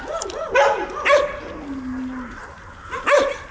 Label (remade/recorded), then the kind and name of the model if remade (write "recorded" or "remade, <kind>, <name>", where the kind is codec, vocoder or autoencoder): recorded